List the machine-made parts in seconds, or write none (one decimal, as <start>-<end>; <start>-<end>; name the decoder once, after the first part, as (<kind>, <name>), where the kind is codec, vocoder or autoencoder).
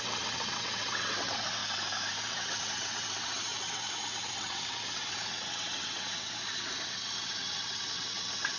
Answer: 0.0-1.6 (vocoder, WaveNeXt); 2.2-8.6